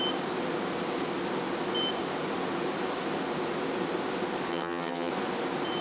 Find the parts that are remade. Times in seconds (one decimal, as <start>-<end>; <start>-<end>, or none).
4.5-5.1